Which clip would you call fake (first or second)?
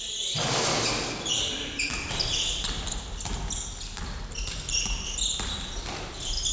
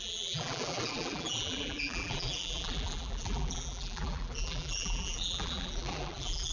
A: second